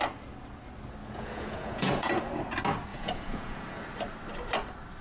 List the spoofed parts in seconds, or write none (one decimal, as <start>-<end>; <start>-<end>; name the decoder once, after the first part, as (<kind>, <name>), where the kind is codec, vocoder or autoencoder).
1.0-2.2 (vocoder, Vocos); 2.9-3.8

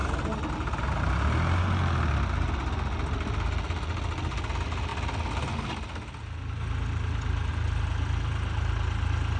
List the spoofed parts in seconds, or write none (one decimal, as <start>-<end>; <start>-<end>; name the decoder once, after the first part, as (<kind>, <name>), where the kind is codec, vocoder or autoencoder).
none

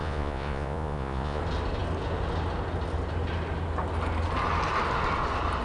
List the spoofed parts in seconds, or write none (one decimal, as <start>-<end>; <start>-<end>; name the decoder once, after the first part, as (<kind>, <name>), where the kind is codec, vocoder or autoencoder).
0.0-1.4 (vocoder, Vocos)

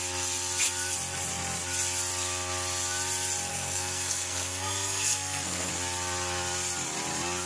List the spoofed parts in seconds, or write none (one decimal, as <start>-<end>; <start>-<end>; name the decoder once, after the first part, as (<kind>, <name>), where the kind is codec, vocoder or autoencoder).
3.5-5.7 (codec, SNAC)